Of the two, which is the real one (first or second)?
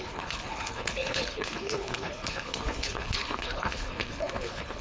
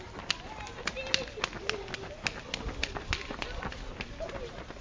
second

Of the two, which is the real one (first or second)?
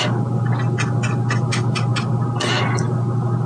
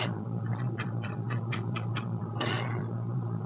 first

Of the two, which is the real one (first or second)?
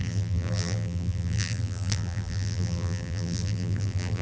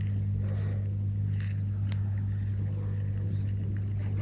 second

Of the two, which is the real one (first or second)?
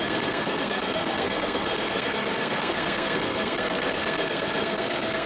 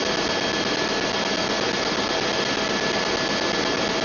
second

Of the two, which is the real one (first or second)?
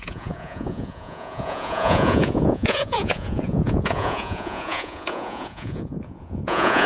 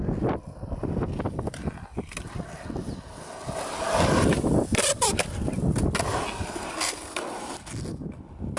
second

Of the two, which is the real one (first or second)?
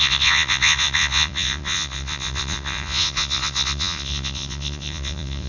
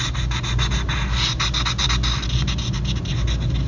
second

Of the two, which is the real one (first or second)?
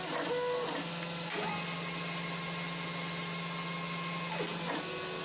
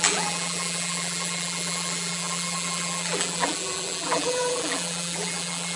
first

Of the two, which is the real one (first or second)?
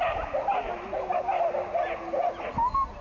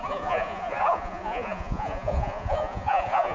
first